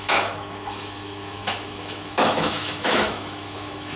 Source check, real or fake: fake